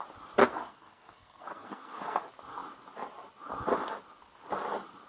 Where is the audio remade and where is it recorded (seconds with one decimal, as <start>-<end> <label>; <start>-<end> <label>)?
0.0-0.4 recorded; 0.4-2.2 remade; 2.2-5.1 recorded